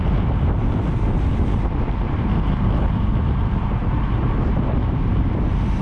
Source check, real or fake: real